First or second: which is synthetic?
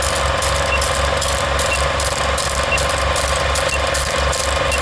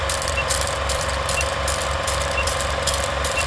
second